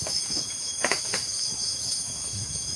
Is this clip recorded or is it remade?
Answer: remade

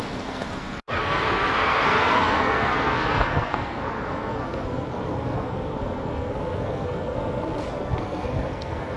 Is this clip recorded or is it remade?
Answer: remade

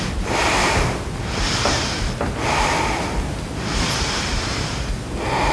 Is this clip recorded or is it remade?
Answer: recorded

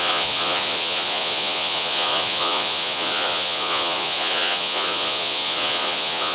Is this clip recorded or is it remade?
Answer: remade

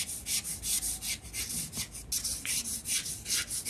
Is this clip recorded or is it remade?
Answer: recorded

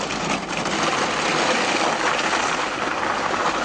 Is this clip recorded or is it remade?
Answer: recorded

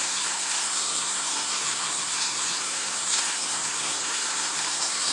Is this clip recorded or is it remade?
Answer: remade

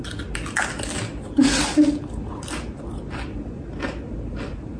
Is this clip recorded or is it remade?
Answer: recorded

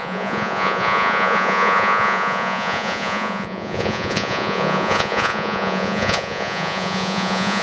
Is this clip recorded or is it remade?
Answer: remade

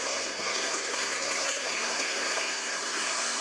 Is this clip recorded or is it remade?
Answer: remade